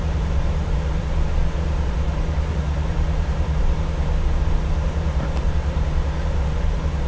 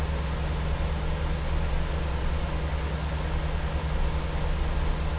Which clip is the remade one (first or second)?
first